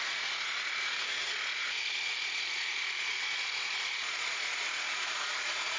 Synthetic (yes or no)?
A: yes